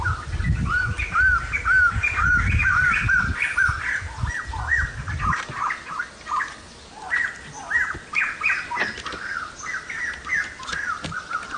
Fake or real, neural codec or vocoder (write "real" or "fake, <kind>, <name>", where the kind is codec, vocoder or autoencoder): real